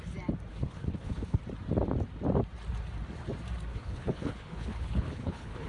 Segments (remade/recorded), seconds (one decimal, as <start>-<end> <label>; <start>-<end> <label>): 0.0-0.5 recorded; 0.5-1.4 remade; 1.4-3.7 recorded; 3.7-5.7 remade